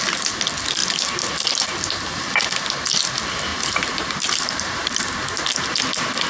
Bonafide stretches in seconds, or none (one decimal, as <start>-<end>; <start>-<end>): 0.0-3.5; 4.7-6.3